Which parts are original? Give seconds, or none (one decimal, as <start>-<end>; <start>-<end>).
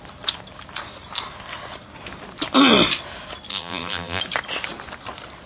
0.0-3.5; 4.2-5.5